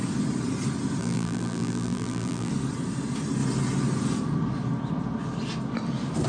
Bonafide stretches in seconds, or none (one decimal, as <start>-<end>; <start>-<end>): 0.0-1.0; 2.5-6.3